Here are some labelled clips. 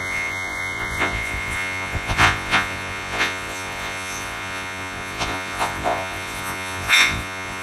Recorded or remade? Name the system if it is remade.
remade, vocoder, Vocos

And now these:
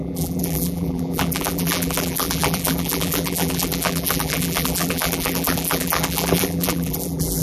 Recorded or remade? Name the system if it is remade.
remade, vocoder, BigVGAN v2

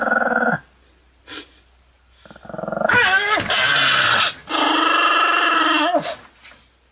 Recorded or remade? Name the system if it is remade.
recorded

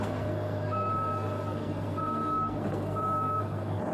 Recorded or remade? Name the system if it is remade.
remade, codec, SNAC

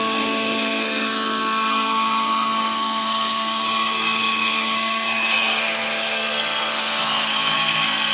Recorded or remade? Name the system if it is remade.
remade, codec, SNAC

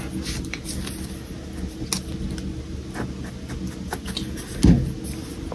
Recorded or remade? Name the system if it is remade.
recorded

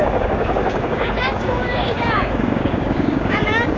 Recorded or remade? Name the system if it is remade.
remade, codec, DAC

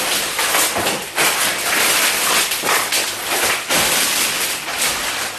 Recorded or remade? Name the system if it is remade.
recorded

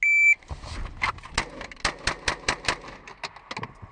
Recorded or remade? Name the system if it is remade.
recorded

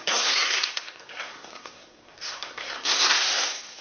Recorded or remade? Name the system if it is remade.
remade, codec, SNAC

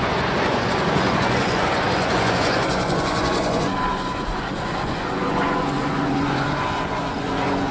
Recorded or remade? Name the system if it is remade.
remade, vocoder, Vocos